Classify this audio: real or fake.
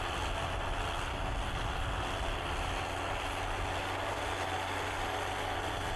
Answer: real